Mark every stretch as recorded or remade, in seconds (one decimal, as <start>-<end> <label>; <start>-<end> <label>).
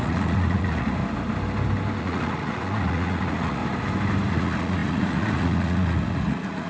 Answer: 0.0-1.0 remade; 1.0-2.0 recorded; 2.0-3.6 remade; 3.6-4.3 recorded; 4.3-6.7 remade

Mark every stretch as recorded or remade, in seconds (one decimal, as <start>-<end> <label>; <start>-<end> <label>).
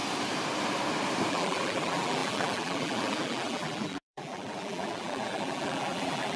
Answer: 0.0-1.3 recorded; 1.3-6.4 remade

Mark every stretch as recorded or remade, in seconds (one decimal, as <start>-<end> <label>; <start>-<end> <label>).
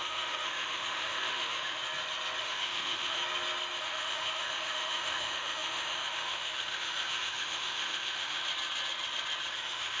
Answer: 0.0-1.8 remade; 1.8-2.4 recorded; 2.4-3.2 remade; 3.2-3.8 recorded; 3.8-8.4 remade; 8.4-9.5 recorded; 9.5-10.0 remade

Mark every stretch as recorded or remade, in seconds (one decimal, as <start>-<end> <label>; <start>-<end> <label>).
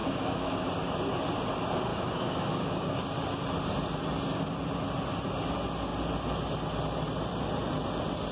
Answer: 0.0-0.7 remade; 0.7-1.9 recorded; 1.9-3.0 remade; 3.0-8.3 recorded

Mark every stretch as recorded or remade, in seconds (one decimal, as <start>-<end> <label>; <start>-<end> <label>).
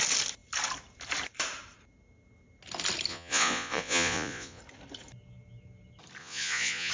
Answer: 0.0-3.1 recorded; 3.1-4.6 remade; 4.6-6.2 recorded; 6.2-6.9 remade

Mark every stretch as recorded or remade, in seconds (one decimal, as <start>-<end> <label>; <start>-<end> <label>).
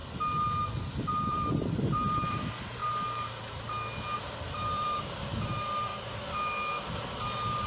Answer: 0.0-1.1 recorded; 1.1-2.8 remade; 2.8-4.4 recorded; 4.4-5.9 remade; 5.9-7.7 recorded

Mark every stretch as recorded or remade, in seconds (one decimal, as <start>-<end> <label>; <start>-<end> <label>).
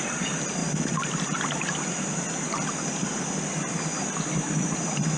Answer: 0.0-5.2 recorded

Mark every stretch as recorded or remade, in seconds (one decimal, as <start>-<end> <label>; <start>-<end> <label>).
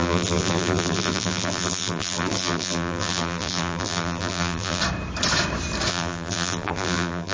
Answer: 0.0-4.8 remade; 4.8-5.9 recorded; 5.9-7.3 remade